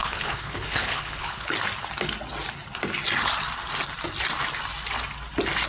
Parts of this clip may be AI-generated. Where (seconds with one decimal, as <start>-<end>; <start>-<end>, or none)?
0.0-1.5

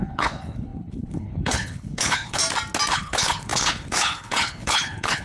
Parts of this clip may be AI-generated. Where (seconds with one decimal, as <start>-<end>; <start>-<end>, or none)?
0.0-2.4; 2.9-5.2

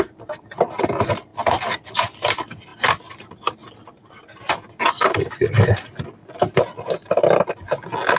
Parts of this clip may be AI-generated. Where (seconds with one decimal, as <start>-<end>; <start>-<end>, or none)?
none

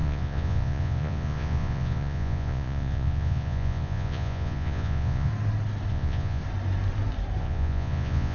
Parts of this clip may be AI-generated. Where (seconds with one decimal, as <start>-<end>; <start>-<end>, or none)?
0.0-5.3; 5.9-6.4; 7.4-8.3